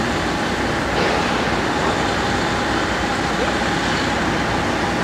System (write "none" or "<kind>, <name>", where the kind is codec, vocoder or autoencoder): none